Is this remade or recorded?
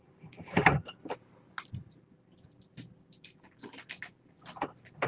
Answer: recorded